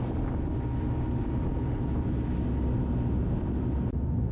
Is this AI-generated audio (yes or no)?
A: no